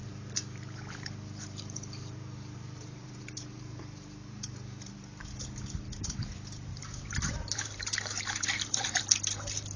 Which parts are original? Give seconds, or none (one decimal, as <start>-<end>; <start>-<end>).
4.9-6.7; 9.0-9.8